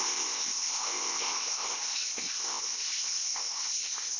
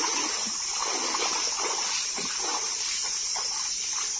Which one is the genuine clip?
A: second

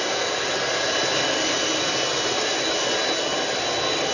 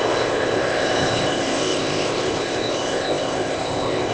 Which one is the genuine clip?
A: first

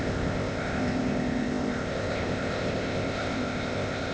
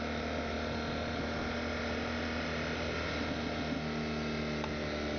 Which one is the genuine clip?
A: second